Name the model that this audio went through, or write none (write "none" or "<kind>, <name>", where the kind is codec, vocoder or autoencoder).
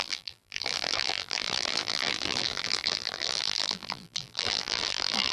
vocoder, BigVGAN v2